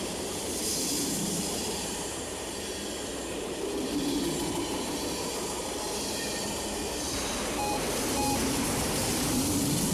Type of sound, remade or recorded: remade